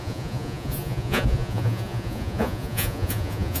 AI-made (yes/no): yes